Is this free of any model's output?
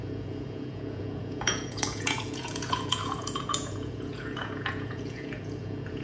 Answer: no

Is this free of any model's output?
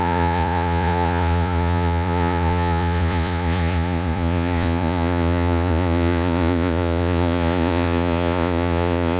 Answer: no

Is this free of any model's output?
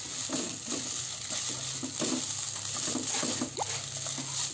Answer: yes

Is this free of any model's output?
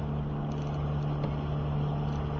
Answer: yes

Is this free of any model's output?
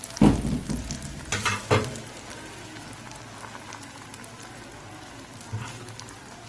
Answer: yes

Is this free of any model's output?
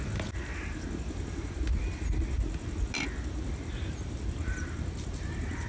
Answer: yes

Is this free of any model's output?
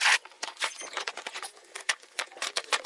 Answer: no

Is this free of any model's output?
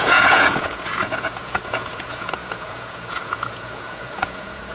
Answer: no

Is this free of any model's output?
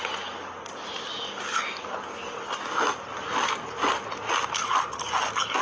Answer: yes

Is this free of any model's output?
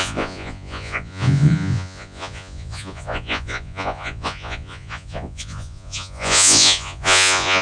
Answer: no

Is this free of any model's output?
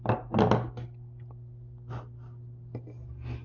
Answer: yes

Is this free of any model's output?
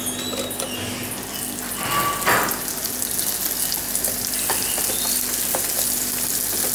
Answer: yes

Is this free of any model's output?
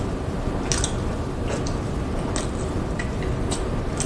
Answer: yes